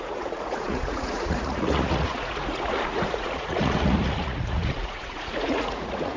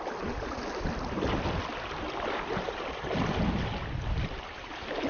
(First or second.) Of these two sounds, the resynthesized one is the first